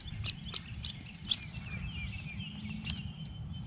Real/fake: real